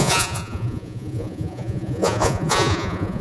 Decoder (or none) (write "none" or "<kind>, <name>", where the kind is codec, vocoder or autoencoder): vocoder, Vocos